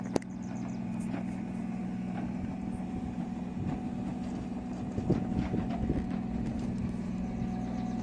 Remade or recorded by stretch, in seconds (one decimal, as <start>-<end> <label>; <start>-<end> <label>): 0.0-8.0 recorded